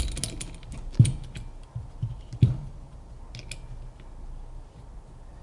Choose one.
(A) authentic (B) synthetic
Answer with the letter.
A